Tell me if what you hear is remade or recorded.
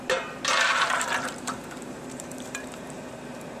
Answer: remade